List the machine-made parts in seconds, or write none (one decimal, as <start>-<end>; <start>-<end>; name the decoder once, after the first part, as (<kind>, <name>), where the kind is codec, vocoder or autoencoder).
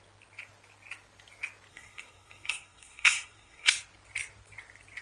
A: 1.7-3.7 (codec, SNAC)